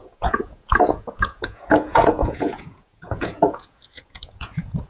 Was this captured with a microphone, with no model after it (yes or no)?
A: no